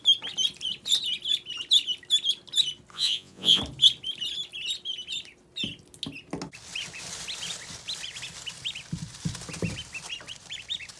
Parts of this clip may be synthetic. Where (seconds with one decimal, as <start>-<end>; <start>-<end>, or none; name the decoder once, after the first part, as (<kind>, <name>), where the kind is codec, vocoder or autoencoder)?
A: 2.9-3.6 (vocoder, Vocos)